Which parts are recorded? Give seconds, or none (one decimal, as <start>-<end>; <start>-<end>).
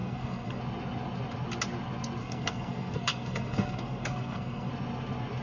0.6-2.2; 4.7-5.4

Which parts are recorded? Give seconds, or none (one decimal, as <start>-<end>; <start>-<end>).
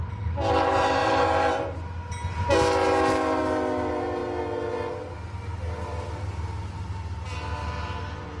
0.0-8.4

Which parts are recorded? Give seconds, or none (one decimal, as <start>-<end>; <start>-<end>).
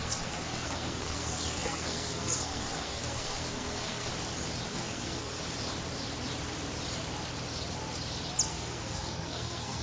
4.1-4.7; 5.4-8.5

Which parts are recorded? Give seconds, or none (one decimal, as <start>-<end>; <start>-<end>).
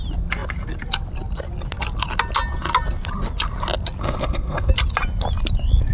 0.0-4.0; 4.7-5.9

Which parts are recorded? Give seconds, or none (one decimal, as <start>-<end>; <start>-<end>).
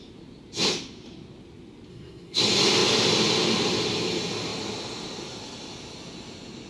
0.0-1.9; 2.4-6.7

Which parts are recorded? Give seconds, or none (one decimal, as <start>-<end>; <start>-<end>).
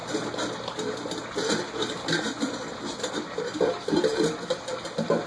0.0-5.3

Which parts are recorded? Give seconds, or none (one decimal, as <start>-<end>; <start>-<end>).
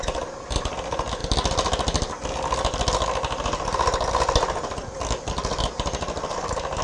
0.0-6.8